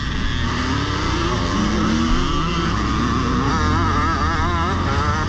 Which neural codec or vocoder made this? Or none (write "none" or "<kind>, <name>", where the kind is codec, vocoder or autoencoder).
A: none